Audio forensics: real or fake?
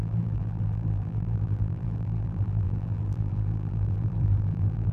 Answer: fake